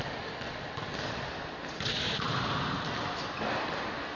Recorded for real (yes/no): yes